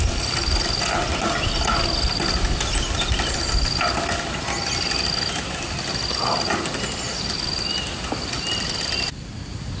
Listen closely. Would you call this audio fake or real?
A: real